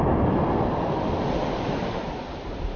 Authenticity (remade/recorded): recorded